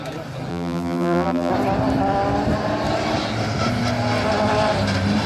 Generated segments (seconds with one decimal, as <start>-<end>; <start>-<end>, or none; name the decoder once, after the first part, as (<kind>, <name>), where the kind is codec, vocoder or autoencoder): 0.5-1.5 (vocoder, BigVGAN v2)